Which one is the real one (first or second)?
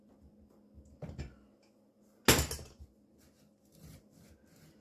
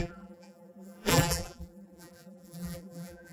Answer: first